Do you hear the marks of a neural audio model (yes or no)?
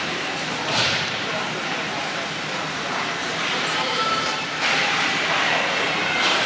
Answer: yes